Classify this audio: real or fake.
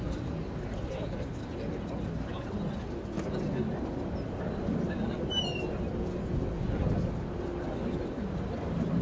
real